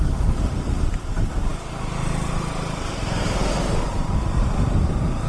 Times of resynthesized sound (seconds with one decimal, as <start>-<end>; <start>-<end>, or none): none